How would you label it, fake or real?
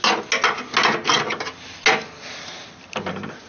real